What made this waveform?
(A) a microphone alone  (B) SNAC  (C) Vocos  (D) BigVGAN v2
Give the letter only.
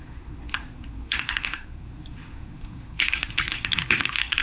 B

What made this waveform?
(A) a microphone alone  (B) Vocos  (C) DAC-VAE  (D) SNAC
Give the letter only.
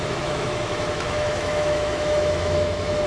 C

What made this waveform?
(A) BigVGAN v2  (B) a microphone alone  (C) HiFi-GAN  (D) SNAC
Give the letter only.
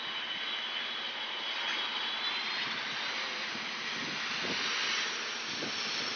B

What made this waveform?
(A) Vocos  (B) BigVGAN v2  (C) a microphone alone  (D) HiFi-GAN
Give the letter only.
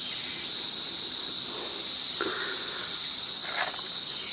C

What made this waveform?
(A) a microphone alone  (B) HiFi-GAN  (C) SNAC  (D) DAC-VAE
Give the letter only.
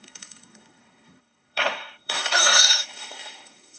C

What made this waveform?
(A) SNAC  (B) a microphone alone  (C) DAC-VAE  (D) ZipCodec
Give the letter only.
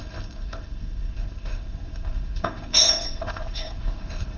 D